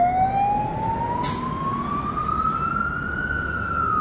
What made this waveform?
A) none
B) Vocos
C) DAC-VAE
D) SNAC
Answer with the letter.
A